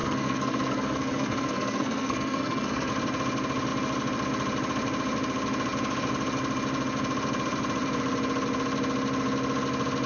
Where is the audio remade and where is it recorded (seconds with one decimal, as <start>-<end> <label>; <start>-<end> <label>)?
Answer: 0.0-2.9 remade; 2.9-10.1 recorded